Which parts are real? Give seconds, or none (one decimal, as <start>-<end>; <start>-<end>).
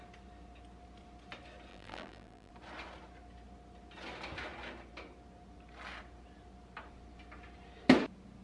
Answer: 0.0-1.7; 2.5-8.4